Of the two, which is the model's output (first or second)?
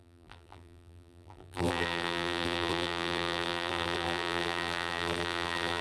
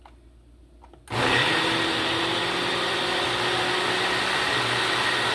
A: first